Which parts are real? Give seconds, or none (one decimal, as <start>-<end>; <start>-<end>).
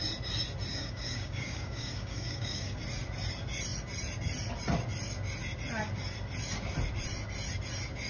0.0-0.7; 2.8-8.1